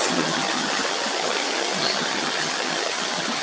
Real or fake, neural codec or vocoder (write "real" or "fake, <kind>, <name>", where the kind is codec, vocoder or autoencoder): fake, vocoder, HiFi-GAN